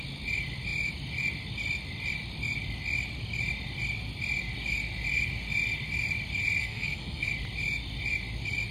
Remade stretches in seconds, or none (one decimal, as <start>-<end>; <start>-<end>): 6.6-7.3

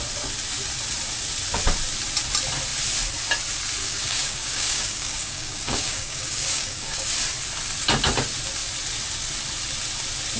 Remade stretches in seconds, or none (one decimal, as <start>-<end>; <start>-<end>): 3.8-7.1

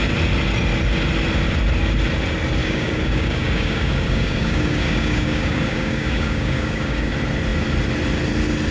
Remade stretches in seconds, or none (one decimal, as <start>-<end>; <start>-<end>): 2.6-7.1